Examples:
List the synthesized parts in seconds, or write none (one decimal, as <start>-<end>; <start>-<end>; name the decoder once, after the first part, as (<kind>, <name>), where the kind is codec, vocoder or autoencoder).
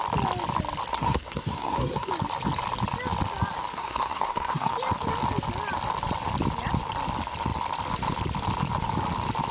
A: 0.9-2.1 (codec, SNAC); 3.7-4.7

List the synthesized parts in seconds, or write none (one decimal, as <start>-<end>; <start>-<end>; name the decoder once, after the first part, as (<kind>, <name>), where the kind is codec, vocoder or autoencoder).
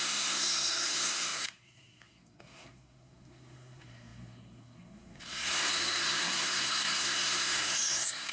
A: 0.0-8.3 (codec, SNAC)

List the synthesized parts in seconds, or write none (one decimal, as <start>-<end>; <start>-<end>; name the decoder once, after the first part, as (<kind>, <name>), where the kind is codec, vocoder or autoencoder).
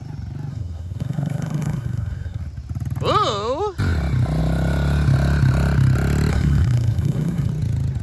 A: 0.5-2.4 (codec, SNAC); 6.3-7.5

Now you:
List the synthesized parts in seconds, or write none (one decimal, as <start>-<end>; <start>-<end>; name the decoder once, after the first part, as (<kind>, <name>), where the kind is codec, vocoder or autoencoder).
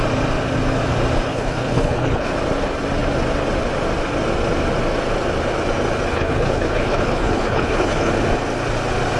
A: 1.3-2.3 (codec, HILCodec); 6.1-8.1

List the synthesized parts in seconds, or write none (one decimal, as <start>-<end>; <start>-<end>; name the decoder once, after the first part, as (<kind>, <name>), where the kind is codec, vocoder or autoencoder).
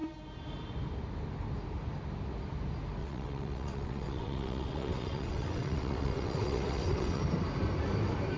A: 3.0-7.2 (vocoder, WaveNeXt)